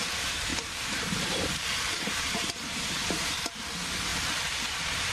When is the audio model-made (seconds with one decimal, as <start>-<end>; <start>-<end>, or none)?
0.5-3.6; 4.1-5.1